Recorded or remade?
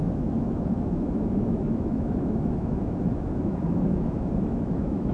remade